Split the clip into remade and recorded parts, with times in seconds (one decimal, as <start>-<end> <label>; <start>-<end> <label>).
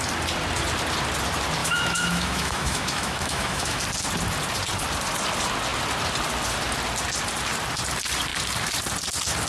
0.0-1.6 recorded; 1.6-3.8 remade; 3.8-9.5 recorded